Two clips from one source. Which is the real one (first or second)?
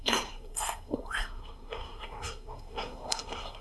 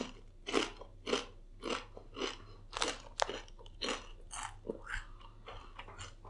second